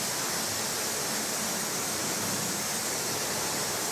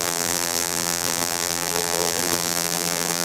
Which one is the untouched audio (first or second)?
first